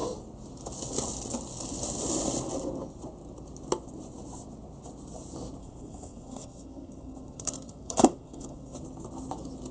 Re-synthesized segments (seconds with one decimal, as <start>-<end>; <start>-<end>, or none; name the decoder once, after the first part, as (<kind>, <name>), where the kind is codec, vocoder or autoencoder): 5.6-8.8 (codec, SNAC)